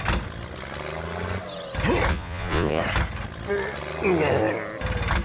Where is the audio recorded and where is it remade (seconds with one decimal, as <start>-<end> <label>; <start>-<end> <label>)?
0.0-2.1 recorded; 2.1-2.8 remade; 2.8-5.2 recorded